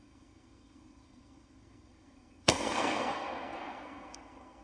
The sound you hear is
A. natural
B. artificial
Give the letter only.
B